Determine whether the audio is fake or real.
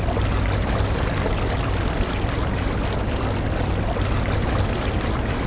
real